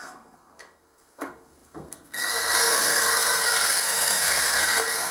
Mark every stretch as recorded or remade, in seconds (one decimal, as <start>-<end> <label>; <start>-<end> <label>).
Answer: 0.0-5.1 remade